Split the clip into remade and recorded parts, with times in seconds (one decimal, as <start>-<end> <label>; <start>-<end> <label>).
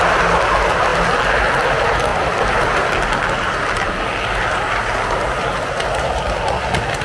0.0-7.0 recorded